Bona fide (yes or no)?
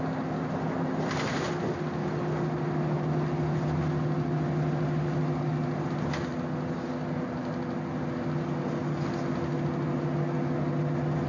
yes